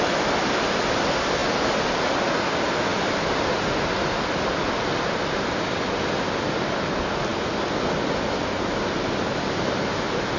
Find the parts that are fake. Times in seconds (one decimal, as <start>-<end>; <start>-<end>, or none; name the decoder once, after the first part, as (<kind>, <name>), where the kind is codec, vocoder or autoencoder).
none